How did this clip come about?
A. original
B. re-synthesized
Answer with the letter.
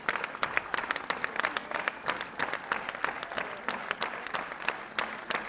A